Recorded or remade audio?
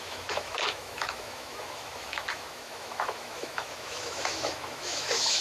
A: remade